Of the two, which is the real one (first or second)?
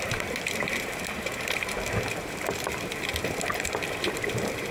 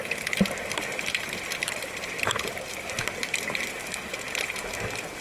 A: second